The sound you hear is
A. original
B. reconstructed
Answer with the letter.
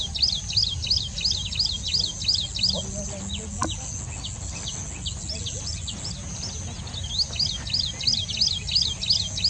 A